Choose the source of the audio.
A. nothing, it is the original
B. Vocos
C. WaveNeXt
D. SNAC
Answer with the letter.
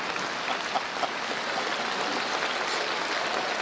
A